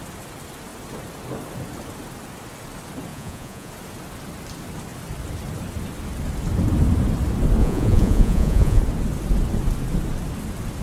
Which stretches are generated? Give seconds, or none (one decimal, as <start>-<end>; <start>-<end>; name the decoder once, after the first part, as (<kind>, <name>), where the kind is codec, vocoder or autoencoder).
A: 3.1-3.7 (vocoder, Vocos); 7.6-8.8